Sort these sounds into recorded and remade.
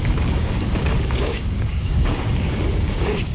remade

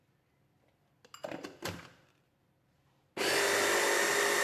recorded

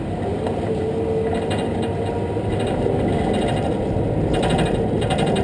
recorded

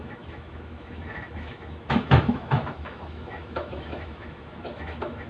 remade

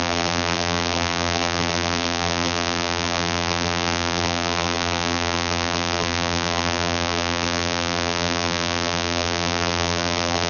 remade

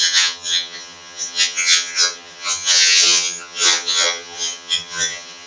remade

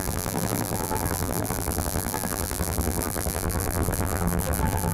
remade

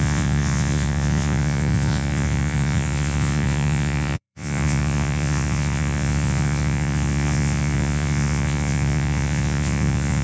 remade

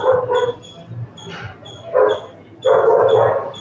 recorded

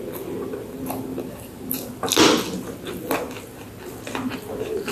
recorded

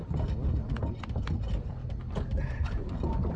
recorded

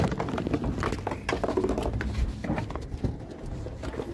recorded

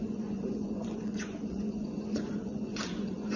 remade